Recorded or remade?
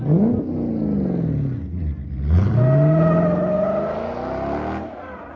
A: recorded